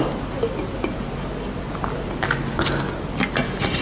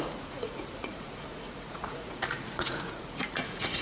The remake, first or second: second